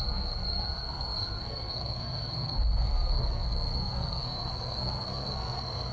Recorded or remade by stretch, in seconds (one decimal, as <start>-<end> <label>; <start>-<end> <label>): 0.0-5.9 remade